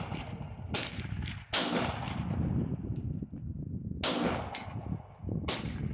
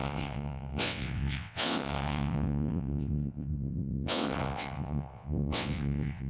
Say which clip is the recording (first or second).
first